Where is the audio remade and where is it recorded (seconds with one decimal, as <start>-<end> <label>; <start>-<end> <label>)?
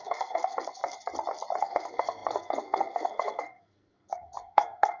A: 0.0-0.8 remade; 0.8-1.6 recorded; 1.6-5.0 remade